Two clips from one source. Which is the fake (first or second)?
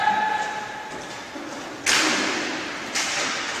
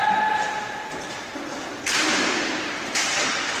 second